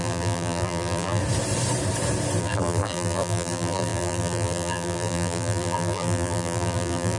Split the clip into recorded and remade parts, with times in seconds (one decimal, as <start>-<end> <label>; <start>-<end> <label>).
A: 0.0-1.2 remade; 1.2-2.4 recorded; 2.4-7.2 remade